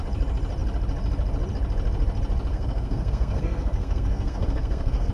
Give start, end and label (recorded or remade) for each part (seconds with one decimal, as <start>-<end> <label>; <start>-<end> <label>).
0.0-2.5 recorded; 2.5-5.1 remade